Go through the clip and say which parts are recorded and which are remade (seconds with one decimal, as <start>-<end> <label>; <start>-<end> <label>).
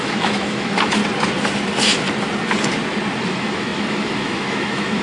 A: 0.0-1.0 remade; 1.0-3.2 recorded; 3.2-5.0 remade